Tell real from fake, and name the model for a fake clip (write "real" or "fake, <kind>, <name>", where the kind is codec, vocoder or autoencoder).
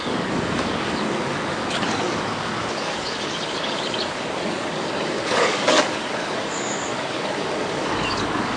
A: fake, codec, DAC